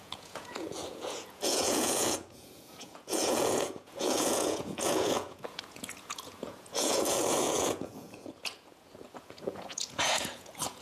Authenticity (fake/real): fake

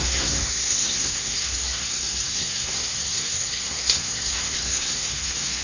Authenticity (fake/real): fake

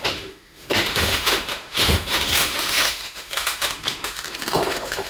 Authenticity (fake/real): fake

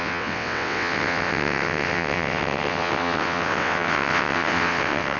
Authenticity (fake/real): fake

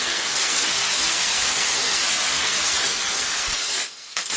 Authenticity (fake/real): fake